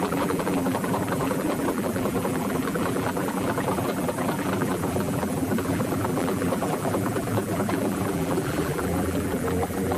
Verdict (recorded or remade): remade